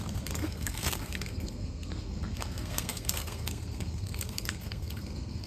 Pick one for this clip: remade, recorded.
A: remade